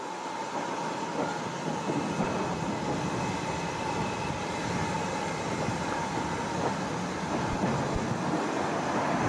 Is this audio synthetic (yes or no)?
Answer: no